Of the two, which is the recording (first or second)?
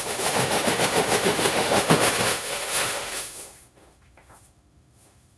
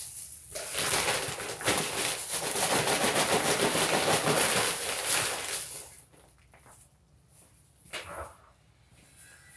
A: second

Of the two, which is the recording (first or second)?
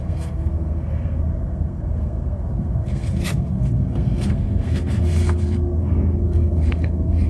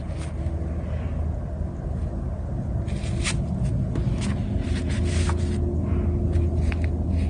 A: second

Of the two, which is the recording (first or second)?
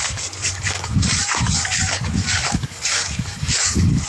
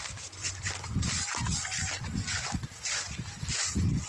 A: second